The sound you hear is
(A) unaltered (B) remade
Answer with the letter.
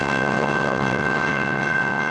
B